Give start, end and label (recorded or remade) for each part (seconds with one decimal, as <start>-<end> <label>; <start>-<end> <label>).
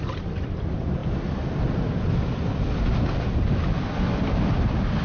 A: 0.0-5.0 recorded